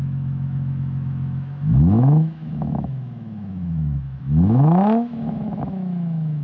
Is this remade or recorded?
remade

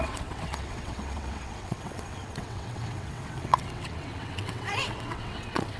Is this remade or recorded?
remade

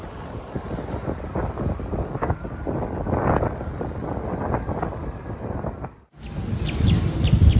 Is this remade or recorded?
recorded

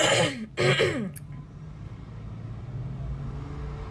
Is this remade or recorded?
recorded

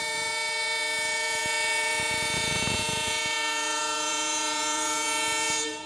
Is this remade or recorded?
remade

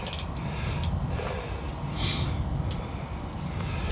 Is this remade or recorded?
recorded